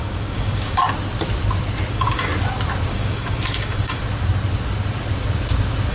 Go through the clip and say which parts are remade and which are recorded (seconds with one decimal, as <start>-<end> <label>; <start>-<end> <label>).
0.0-0.8 remade; 0.8-1.9 recorded; 1.9-2.3 remade; 2.3-2.9 recorded; 2.9-4.0 remade; 4.0-5.9 recorded